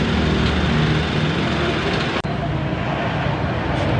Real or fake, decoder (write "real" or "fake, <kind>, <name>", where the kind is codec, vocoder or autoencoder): real